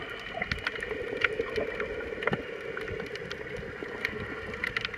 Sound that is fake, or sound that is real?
real